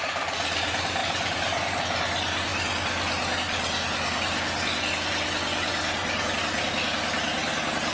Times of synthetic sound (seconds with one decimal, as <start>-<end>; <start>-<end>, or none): 1.0-1.8